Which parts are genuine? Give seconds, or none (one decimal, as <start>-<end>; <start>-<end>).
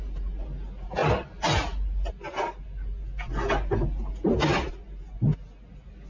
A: 0.0-6.1